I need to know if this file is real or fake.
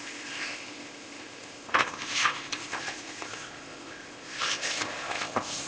fake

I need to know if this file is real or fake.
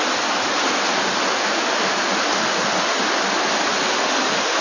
real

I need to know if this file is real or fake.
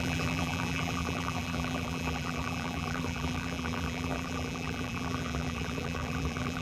fake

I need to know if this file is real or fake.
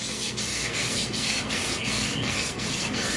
fake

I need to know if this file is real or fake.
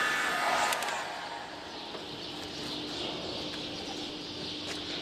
real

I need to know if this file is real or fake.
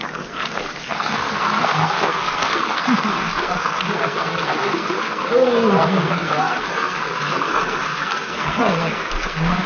fake